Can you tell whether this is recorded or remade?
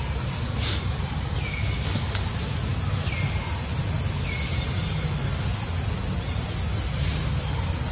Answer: recorded